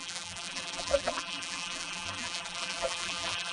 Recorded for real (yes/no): no